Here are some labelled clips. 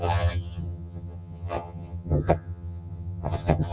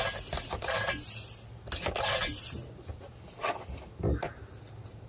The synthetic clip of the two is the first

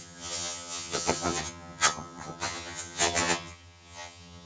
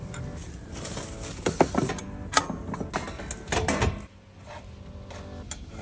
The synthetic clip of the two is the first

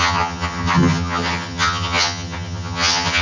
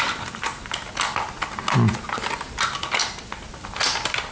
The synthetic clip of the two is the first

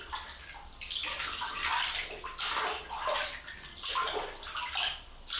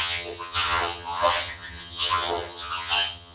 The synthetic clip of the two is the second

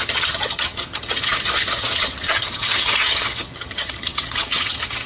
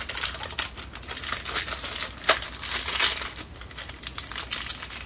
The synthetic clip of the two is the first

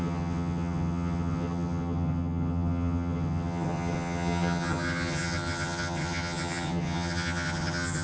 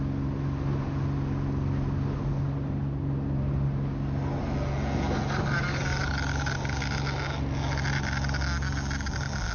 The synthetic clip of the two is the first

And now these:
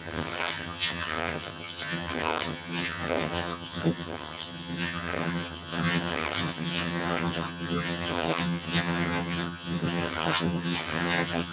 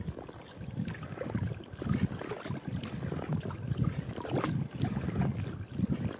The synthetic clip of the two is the first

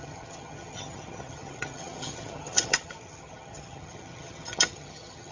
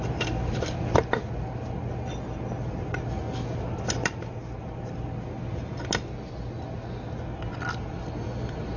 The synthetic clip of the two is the first